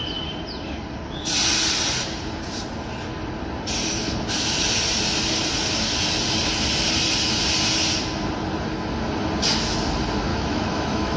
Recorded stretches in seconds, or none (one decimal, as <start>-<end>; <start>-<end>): 0.0-10.3